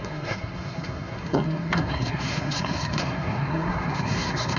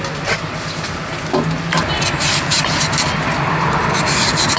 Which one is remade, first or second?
first